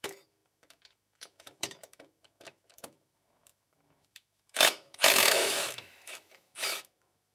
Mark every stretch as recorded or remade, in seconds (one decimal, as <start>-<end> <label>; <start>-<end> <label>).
0.0-7.3 remade